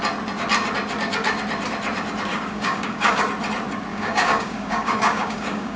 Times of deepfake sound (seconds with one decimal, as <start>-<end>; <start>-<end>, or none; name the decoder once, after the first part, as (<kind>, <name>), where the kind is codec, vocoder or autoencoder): 2.3-3.2 (codec, DAC); 3.9-5.8